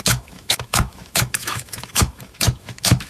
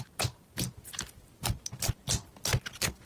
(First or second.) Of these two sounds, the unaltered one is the second